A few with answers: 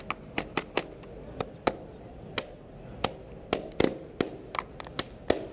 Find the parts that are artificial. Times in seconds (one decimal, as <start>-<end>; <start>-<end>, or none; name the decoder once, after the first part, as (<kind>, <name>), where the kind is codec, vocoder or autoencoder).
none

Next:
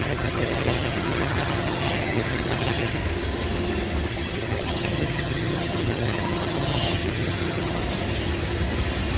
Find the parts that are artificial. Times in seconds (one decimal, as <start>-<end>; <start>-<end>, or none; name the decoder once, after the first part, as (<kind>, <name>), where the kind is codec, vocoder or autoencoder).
0.0-3.0 (vocoder, HiFi-GAN); 4.1-7.8

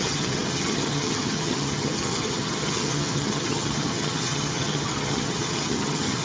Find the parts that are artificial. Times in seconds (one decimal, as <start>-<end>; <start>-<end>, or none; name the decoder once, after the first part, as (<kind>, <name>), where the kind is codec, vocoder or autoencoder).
0.0-6.2 (vocoder, HiFi-GAN)

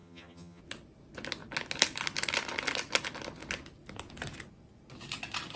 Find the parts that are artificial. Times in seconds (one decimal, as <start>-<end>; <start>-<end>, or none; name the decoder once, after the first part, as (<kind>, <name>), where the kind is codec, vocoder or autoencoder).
0.0-0.6 (vocoder, HiFi-GAN)